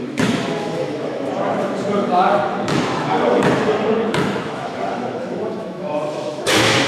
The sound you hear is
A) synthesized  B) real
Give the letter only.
A